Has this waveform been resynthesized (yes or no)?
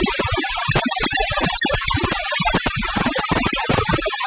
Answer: yes